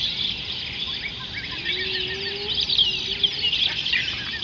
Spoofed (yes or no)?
no